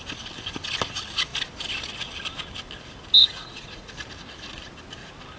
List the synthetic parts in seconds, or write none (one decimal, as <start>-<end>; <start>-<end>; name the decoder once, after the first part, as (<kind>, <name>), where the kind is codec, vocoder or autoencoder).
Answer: 3.2-3.9 (vocoder, Vocos)